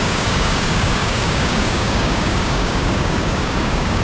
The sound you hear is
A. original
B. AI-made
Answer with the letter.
B